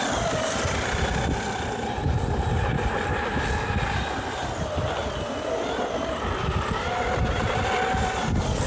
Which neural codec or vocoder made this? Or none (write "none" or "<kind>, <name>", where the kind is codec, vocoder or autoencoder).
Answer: none